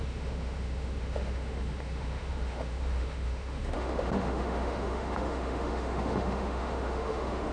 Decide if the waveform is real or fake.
fake